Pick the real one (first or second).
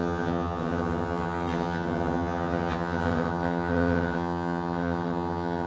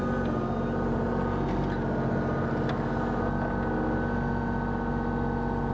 second